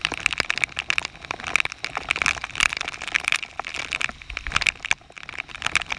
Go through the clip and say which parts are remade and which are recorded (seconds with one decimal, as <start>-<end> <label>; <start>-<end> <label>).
0.0-6.0 recorded